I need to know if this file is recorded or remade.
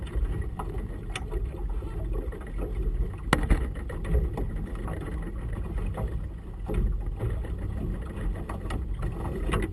recorded